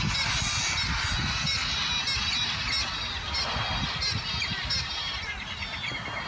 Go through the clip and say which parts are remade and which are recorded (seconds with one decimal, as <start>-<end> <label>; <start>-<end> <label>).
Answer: 0.0-6.3 recorded